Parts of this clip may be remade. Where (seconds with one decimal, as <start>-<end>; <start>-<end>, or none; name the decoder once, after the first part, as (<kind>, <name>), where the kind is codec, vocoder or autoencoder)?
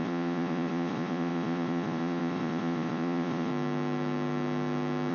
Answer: 0.0-3.5 (vocoder, Vocos)